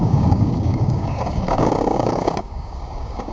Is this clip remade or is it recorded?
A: remade